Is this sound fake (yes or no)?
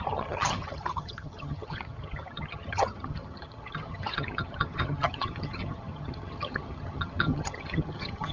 yes